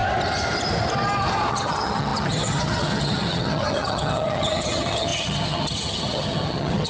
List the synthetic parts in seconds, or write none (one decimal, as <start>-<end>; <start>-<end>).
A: 1.5-6.9